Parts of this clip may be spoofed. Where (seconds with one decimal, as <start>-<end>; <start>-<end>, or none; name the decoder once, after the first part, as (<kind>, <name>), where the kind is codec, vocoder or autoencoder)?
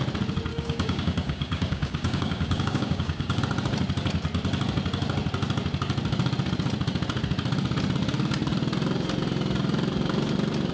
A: 0.5-3.4 (codec, DAC)